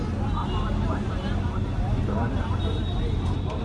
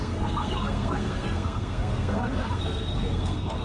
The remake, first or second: second